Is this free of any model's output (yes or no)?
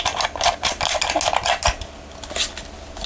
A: yes